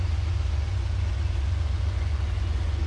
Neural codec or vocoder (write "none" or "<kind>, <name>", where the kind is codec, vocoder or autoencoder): vocoder, Vocos